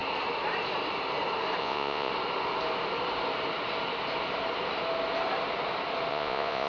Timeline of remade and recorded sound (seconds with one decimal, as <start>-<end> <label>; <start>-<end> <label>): 0.0-1.6 recorded; 1.6-2.1 remade; 2.1-6.1 recorded; 6.1-6.7 remade